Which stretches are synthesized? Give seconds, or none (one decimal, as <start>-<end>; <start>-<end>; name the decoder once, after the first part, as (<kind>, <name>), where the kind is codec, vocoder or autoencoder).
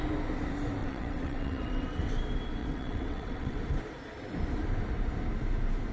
0.8-2.0 (vocoder, WaveNeXt); 2.6-3.6